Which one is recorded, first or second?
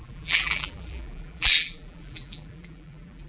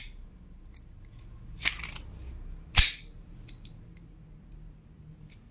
second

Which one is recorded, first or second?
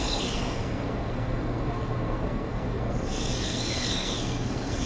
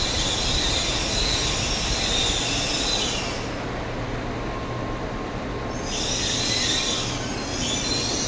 second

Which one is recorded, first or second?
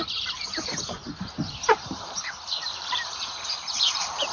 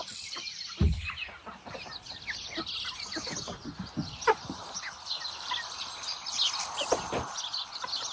second